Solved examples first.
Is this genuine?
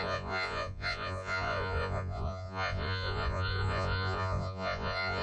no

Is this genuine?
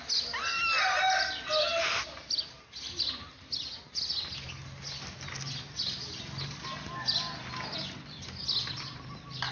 yes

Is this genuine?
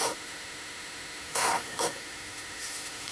no